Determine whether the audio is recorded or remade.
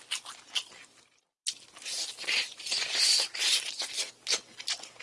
recorded